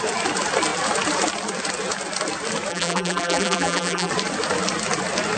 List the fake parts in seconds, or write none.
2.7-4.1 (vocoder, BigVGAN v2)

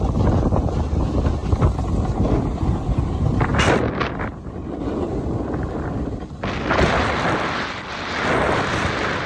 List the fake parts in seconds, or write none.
none